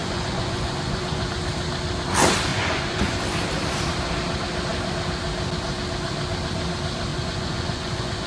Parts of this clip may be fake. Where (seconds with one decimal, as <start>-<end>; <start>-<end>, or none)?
0.0-1.3; 2.5-3.2; 7.1-8.3